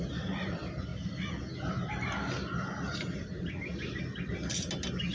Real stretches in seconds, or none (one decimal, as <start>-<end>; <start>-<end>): 0.0-5.1